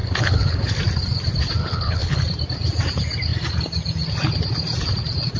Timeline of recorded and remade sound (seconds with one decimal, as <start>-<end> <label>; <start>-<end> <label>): 0.0-0.8 remade; 0.8-1.6 recorded; 1.6-2.2 remade; 2.2-5.4 recorded